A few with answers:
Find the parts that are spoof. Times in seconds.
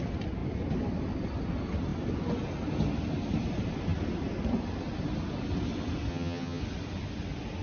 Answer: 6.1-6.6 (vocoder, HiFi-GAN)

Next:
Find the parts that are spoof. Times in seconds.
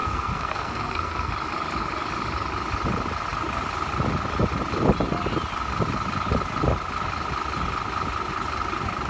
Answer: 0.0-1.3 (codec, SNAC)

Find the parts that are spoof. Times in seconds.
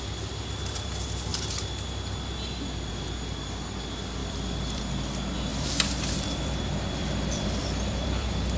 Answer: 4.2-4.8 (vocoder, BigVGAN v2); 5.5-8.6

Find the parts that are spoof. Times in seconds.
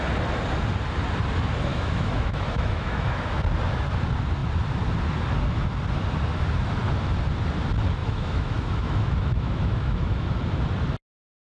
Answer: 1.7-3.4 (autoencoder, DAC-VAE); 8.0-10.3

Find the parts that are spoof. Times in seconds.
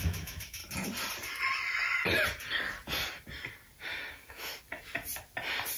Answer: 0.0-0.6 (autoencoder, DAC-VAE); 4.1-4.5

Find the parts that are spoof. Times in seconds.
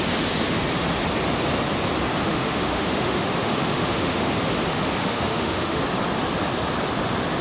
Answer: 2.2-4.3 (autoencoder, DAC-VAE); 5.0-5.8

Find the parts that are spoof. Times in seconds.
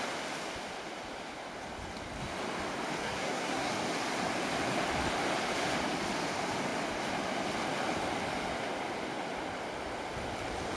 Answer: 3.0-3.7 (codec, SNAC)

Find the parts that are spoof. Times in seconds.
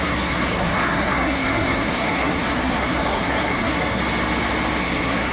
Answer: 0.0-4.0 (codec, SNAC); 4.8-5.3